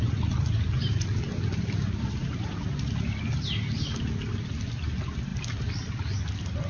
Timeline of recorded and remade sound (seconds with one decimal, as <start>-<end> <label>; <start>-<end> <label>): 0.0-6.7 recorded